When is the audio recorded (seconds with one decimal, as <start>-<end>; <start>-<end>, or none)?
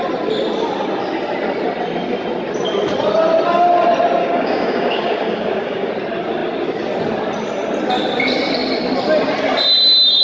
0.0-4.2; 5.9-10.2